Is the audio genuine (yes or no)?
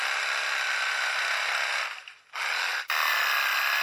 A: yes